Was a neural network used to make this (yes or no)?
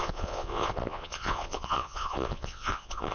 yes